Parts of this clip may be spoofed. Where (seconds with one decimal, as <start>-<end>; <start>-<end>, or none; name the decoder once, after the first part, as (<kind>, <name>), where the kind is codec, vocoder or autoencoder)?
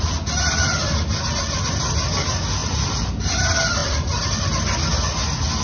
2.6-3.4 (vocoder, BigVGAN v2); 3.8-4.4